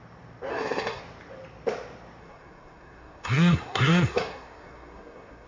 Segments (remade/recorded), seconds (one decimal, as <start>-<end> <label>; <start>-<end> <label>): 0.0-0.5 recorded; 0.5-1.0 remade; 1.0-2.2 recorded; 2.2-5.5 remade

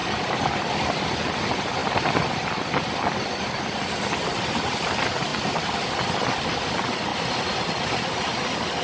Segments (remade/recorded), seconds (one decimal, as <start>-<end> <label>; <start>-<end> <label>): 0.0-1.0 remade; 1.0-1.8 recorded; 1.8-2.7 remade; 2.7-7.1 recorded; 7.1-7.6 remade; 7.6-8.8 recorded